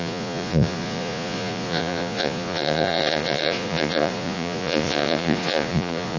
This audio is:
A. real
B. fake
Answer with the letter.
B